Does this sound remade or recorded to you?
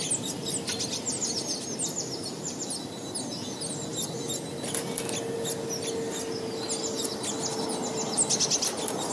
recorded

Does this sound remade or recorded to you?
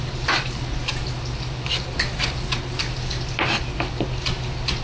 recorded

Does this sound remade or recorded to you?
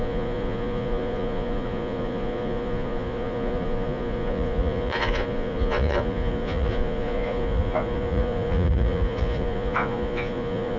remade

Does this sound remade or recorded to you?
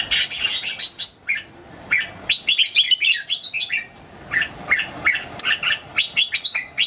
recorded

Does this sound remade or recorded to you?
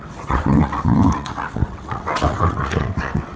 remade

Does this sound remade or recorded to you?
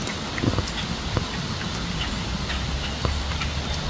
recorded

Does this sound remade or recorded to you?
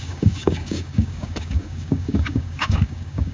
remade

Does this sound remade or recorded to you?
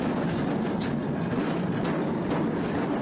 recorded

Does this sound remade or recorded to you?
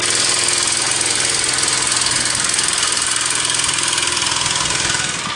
recorded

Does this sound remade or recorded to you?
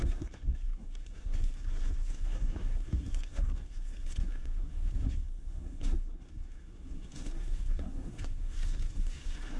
remade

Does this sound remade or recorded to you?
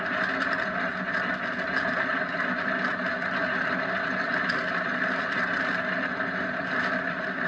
recorded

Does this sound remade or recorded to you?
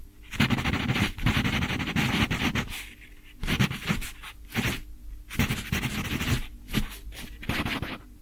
recorded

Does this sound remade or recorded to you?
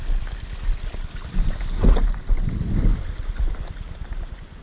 recorded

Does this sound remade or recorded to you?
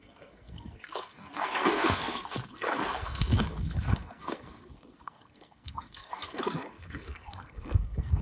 remade